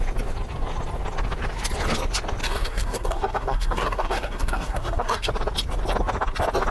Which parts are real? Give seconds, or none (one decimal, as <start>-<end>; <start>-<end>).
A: 0.0-2.4; 5.3-6.7